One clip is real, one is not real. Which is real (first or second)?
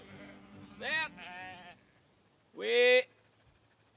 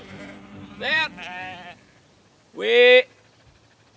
first